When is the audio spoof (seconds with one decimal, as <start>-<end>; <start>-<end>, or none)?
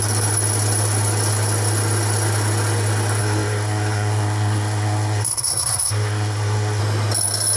3.2-6.8